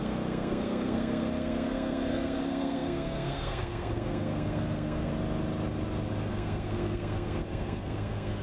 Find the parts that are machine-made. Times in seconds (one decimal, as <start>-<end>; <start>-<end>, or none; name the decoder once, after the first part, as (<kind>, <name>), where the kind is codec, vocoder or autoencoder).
0.0-5.1 (codec, SNAC); 6.3-8.4